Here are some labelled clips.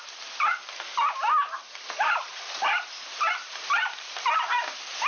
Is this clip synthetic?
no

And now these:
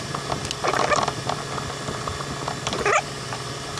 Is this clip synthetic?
no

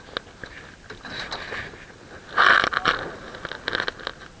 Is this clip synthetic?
no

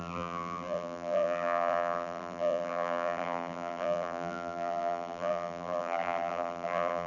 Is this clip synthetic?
yes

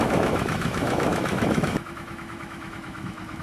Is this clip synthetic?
yes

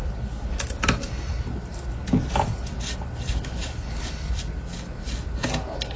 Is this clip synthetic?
no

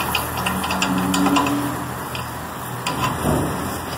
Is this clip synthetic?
no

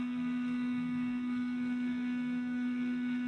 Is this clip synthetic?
yes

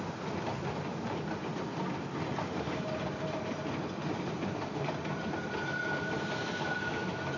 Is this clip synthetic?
no